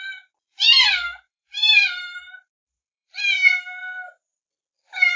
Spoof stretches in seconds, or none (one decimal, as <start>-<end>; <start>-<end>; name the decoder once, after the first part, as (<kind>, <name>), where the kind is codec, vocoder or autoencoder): 0.9-3.3 (vocoder, BigVGAN v2); 3.8-4.4